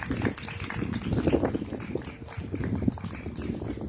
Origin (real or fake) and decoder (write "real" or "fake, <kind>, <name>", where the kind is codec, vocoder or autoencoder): real